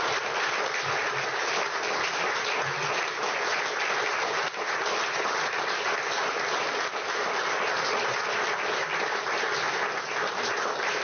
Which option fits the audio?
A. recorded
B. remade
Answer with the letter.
A